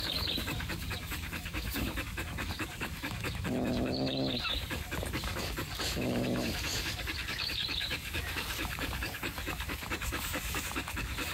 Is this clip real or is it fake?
fake